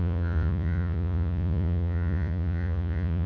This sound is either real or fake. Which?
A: fake